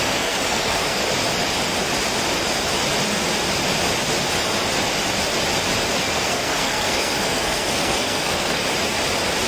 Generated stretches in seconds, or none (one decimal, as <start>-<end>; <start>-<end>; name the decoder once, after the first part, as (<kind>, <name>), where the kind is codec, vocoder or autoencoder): 0.0-1.0 (codec, SNAC); 6.0-8.6